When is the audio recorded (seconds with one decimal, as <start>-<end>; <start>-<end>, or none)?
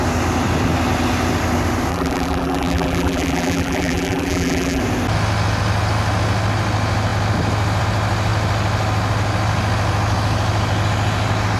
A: 0.0-1.9; 4.8-11.6